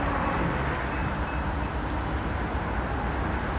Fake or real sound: real